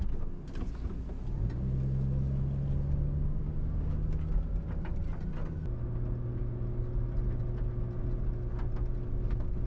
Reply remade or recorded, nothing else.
recorded